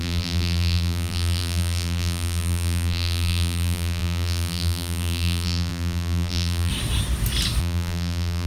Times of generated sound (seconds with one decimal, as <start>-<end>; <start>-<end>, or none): 0.0-6.7; 7.6-8.5